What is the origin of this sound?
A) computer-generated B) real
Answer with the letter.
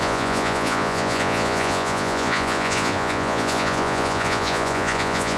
A